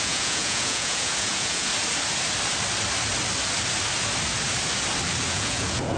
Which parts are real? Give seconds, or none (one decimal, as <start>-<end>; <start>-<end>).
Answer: 1.7-5.3